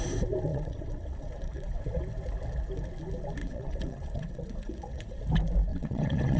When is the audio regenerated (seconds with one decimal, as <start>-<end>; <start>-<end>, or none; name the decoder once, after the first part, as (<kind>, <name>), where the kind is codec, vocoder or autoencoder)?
0.5-1.8 (vocoder, WaveNeXt); 3.4-5.2; 5.7-6.4